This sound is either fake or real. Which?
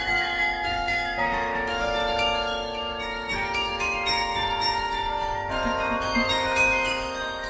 fake